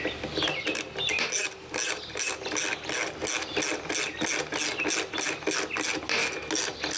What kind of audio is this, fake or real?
real